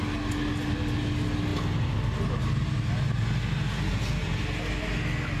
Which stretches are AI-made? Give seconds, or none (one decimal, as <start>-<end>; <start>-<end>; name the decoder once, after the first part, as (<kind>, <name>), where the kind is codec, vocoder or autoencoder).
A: none